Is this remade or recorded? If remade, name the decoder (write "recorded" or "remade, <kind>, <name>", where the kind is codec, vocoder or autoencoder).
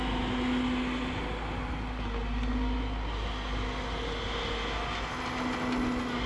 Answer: recorded